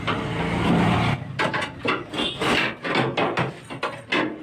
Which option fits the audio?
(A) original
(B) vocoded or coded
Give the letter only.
A